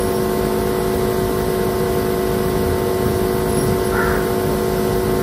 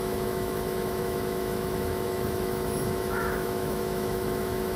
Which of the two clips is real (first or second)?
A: first